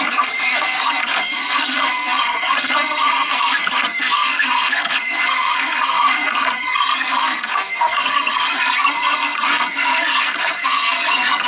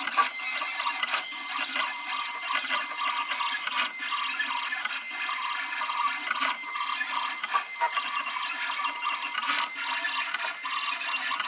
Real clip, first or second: second